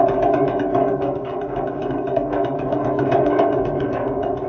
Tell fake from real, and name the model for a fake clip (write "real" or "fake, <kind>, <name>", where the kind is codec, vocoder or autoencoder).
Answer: fake, codec, DAC